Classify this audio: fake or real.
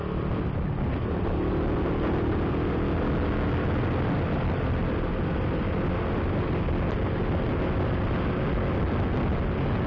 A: real